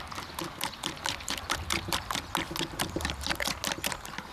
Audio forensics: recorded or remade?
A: recorded